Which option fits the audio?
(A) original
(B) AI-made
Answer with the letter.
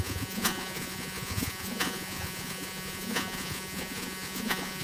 B